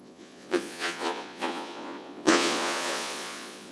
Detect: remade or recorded remade